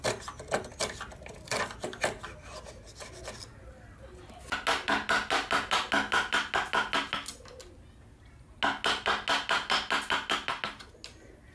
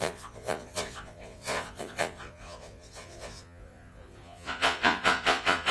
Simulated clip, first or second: second